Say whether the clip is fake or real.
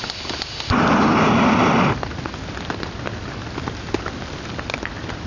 real